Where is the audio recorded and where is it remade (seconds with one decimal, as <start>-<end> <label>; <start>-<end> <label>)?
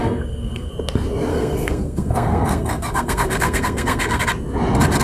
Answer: 0.0-0.7 remade; 0.7-1.3 recorded; 1.3-4.2 remade; 4.2-5.0 recorded